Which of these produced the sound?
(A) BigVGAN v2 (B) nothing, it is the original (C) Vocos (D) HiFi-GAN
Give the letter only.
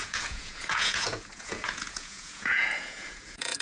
C